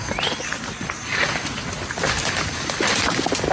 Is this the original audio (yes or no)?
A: yes